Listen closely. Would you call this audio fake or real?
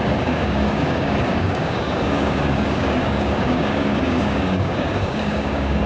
fake